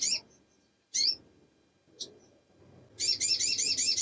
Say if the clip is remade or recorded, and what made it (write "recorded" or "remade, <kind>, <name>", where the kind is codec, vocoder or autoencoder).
recorded